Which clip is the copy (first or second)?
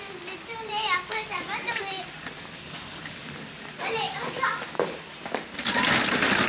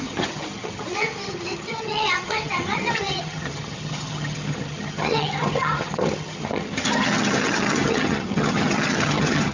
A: second